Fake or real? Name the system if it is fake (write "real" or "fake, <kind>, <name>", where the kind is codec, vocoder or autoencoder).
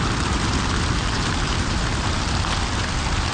real